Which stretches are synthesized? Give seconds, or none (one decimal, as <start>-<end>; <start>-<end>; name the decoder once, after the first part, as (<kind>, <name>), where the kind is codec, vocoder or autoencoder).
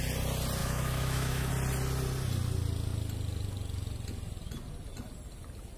0.6-1.5 (autoencoder, DAC-VAE)